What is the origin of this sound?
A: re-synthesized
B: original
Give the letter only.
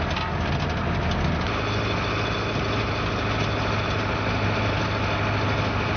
B